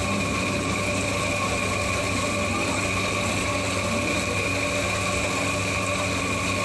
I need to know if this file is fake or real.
real